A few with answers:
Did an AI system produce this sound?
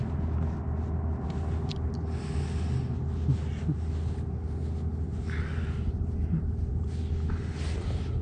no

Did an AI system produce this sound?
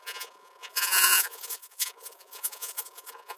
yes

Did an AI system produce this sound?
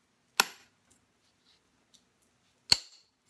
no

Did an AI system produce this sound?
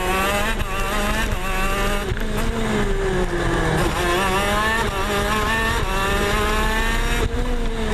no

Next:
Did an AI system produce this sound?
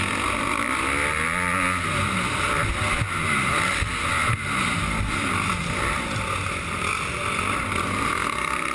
no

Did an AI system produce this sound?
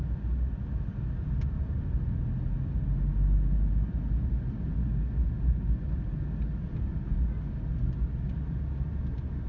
no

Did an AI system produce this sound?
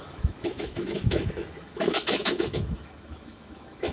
yes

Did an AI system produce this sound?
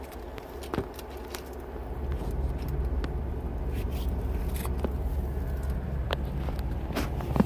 no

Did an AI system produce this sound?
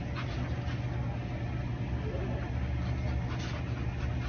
no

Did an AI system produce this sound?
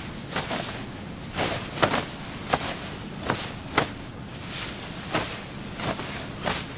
no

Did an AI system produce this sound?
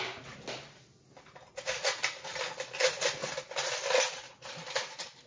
no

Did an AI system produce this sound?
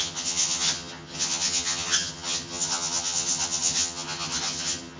yes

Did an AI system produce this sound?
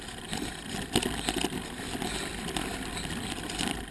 no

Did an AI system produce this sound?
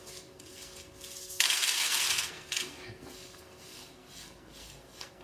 yes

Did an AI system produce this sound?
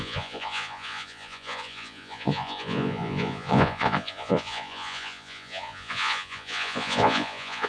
yes